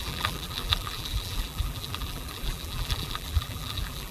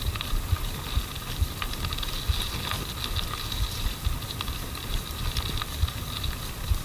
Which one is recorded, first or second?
second